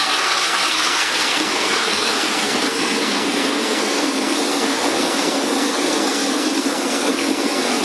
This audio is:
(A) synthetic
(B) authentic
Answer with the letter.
A